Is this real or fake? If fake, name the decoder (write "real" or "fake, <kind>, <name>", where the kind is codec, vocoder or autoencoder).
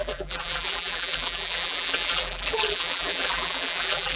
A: fake, vocoder, BigVGAN v2